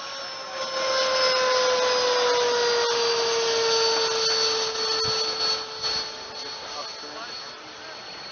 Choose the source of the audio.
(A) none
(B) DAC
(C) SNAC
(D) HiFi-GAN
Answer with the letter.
A